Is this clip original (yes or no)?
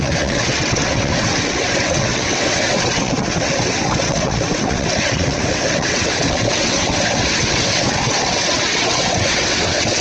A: no